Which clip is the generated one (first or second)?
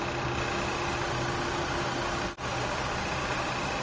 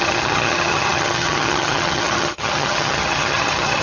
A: second